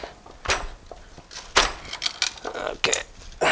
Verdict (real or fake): real